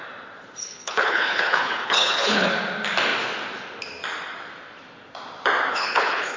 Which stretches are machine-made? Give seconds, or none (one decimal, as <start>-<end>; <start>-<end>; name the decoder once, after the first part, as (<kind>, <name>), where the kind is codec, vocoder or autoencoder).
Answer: 0.6-2.5 (codec, HILCodec); 5.7-6.4